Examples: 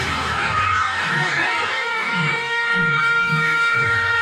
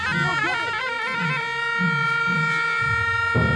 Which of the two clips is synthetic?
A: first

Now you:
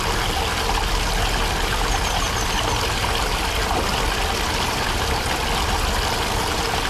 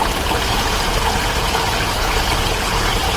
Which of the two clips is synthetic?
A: second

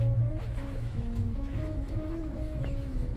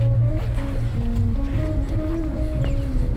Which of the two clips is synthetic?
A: first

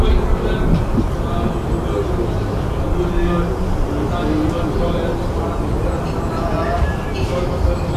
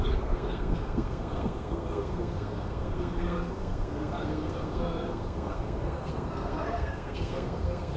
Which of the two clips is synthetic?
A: second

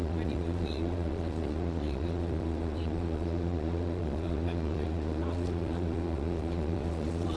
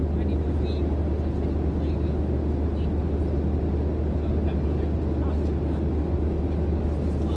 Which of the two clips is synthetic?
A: first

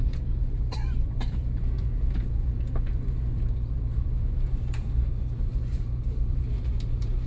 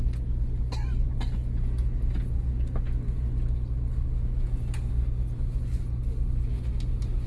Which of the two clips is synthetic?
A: first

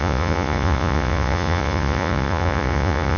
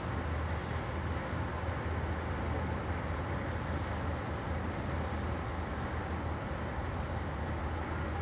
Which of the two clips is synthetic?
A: first